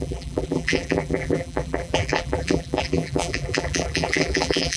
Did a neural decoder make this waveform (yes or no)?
yes